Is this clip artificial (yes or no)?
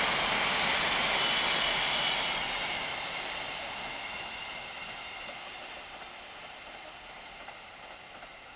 no